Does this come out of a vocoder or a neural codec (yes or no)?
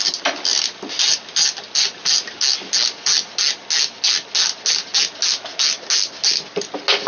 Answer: no